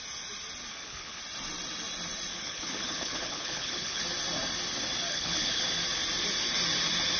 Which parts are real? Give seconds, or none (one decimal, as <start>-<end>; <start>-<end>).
0.0-0.7; 1.2-2.3; 4.0-5.1; 5.6-7.2